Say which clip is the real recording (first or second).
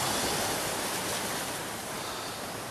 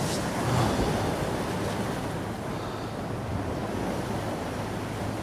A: second